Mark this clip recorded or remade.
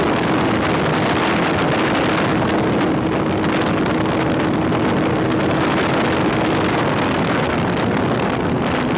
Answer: recorded